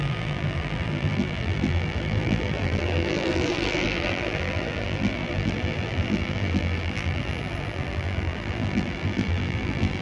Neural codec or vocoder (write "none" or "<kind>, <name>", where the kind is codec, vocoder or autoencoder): vocoder, BigVGAN v2